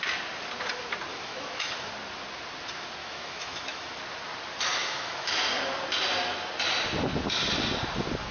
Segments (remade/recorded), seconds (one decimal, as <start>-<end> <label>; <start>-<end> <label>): 0.0-1.1 recorded; 1.1-1.9 remade; 1.9-3.0 recorded; 3.0-3.9 remade; 3.9-4.8 recorded; 4.8-5.3 remade; 5.3-8.3 recorded